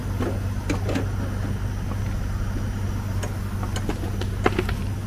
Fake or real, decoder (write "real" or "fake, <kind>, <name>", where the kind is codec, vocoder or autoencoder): real